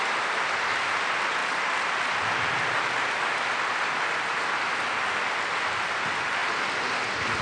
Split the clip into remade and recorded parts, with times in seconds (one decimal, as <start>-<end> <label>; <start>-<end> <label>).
0.0-7.4 recorded